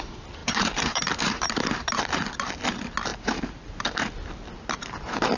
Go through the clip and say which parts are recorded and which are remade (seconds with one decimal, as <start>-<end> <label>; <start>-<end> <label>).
0.0-0.4 recorded; 0.4-1.7 remade; 1.7-3.1 recorded; 3.1-4.1 remade; 4.1-5.4 recorded